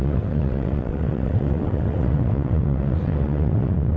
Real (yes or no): no